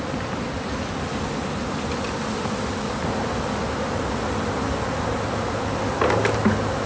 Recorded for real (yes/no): yes